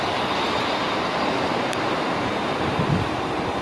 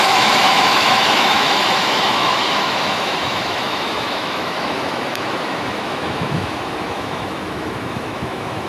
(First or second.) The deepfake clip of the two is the second